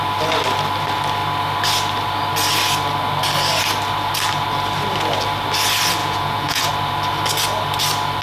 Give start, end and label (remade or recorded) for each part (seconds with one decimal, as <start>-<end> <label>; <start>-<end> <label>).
0.0-6.0 recorded; 6.0-6.7 remade; 6.7-8.2 recorded